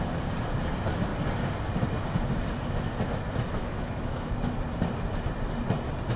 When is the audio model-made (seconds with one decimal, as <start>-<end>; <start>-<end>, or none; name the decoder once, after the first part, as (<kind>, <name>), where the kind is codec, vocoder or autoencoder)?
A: 3.6-4.5 (autoencoder, DAC-VAE)